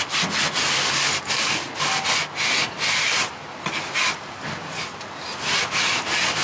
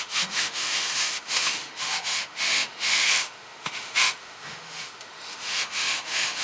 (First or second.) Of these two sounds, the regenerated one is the second